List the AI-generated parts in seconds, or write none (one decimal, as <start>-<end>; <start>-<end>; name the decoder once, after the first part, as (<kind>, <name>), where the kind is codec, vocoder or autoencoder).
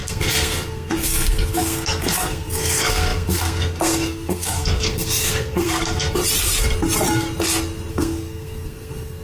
0.0-6.2 (codec, SNAC); 7.9-9.2